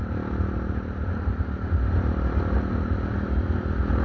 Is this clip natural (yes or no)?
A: yes